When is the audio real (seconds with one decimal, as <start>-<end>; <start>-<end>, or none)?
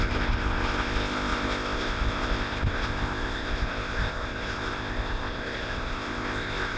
none